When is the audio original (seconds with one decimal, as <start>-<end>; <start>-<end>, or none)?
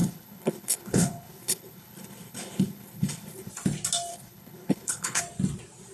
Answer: 3.5-4.1; 5.2-5.9